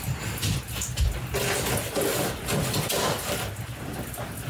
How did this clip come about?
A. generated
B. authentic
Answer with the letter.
B